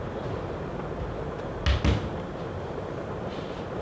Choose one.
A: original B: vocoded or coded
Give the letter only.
A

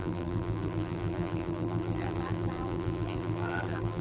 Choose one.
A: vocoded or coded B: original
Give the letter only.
A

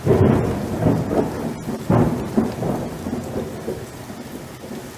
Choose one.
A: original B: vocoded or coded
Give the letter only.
A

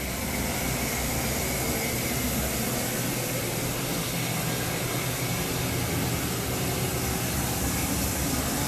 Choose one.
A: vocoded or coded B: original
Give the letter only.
B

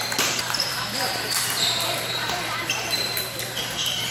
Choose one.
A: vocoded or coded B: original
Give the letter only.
A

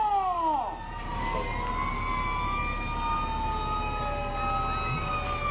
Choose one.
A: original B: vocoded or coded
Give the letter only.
A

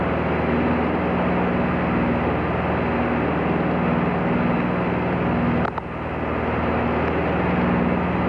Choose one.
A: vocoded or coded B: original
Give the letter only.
B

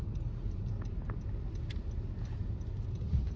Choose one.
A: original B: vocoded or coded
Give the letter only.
A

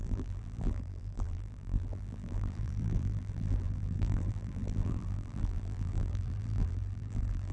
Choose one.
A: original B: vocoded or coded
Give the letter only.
B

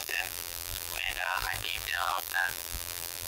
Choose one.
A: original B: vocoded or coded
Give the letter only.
B